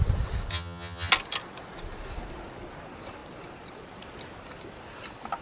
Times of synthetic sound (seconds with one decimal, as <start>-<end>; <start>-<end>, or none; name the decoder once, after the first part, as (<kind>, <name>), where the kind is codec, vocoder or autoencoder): 0.5-1.1 (vocoder, HiFi-GAN)